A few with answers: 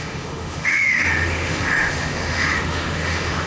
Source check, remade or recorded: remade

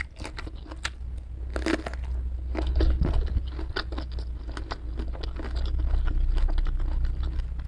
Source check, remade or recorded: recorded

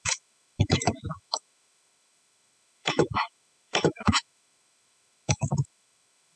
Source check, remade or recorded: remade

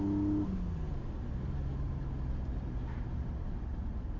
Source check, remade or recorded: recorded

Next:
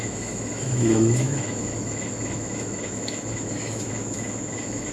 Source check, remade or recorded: remade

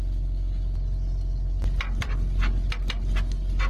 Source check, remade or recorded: recorded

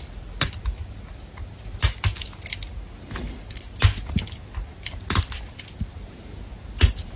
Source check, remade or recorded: recorded